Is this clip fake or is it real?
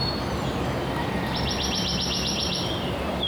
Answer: real